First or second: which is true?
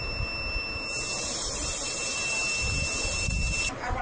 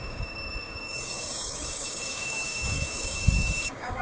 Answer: first